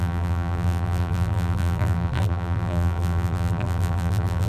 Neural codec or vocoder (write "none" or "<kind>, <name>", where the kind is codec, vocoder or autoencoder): vocoder, BigVGAN v2